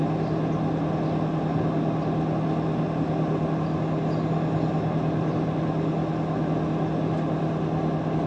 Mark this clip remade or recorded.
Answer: recorded